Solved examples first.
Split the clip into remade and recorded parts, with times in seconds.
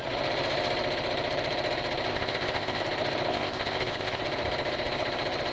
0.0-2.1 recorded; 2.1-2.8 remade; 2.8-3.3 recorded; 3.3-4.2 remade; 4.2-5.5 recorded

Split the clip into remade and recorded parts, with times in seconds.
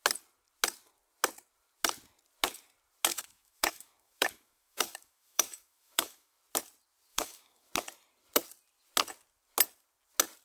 0.0-3.1 recorded; 3.1-6.4 remade; 6.4-7.1 recorded; 7.1-7.7 remade; 7.7-10.4 recorded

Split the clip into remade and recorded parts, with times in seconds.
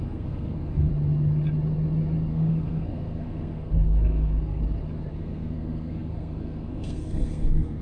0.0-0.9 remade; 0.9-2.3 recorded; 2.3-4.6 remade; 4.6-5.1 recorded; 5.1-7.8 remade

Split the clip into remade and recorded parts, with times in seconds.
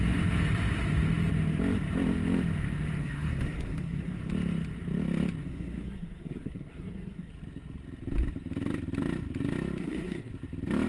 0.0-3.0 recorded; 3.0-4.2 remade; 4.2-5.4 recorded; 5.4-7.3 remade; 7.3-9.8 recorded; 9.8-10.3 remade; 10.3-10.9 recorded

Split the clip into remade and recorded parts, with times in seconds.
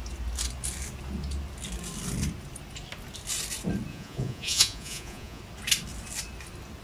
0.0-3.9 recorded; 3.9-5.4 remade; 5.4-6.8 recorded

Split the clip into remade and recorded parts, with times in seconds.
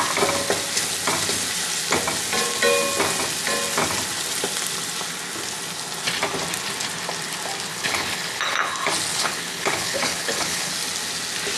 0.0-7.7 recorded; 7.7-8.7 remade; 8.7-9.1 recorded; 9.1-10.7 remade; 10.7-11.6 recorded